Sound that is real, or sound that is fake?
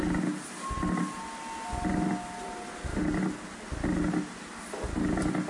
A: real